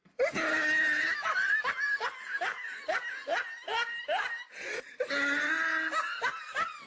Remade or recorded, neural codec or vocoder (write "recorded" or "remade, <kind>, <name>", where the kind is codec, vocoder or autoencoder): recorded